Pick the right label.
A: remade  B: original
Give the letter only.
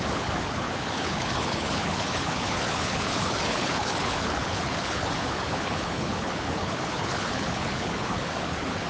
A